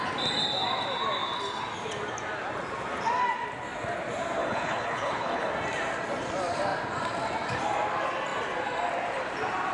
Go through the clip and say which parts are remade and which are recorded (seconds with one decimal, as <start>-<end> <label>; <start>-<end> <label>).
0.0-4.4 recorded; 4.4-5.5 remade; 5.5-9.7 recorded